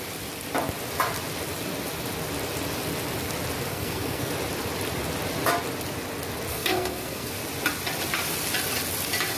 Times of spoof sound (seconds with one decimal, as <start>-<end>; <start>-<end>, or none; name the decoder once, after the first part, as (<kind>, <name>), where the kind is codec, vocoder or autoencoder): 3.7-4.3 (codec, SNAC); 6.5-7.3